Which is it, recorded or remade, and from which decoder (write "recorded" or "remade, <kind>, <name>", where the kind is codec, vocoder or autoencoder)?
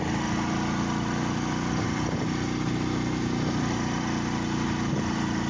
recorded